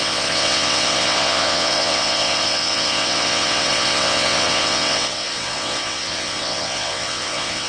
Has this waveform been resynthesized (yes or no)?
yes